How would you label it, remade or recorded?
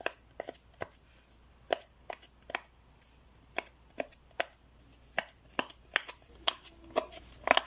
recorded